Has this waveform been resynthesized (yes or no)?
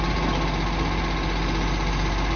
no